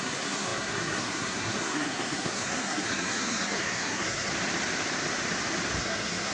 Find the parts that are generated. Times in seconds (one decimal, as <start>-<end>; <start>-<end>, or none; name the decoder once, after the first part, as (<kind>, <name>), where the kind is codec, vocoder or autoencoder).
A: 0.0-4.3 (codec, SNAC); 5.8-6.3